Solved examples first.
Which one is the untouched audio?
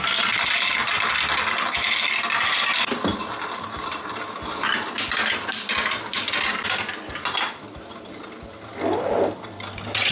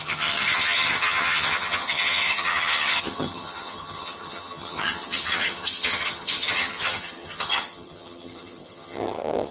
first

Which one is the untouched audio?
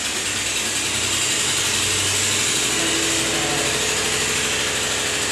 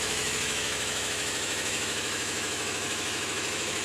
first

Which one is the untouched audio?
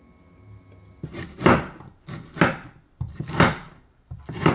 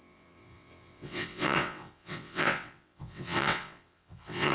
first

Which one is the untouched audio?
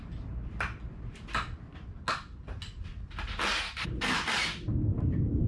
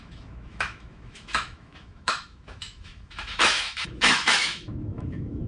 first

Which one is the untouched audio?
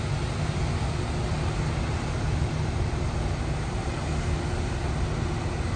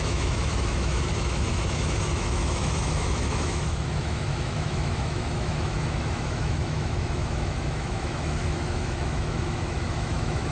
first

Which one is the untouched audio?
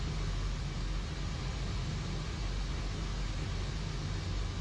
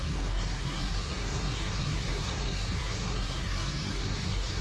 first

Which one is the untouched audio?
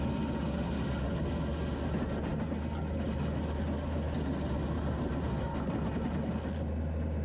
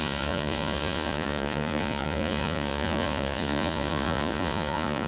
first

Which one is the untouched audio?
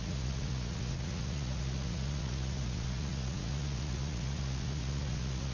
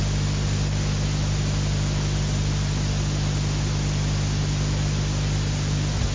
second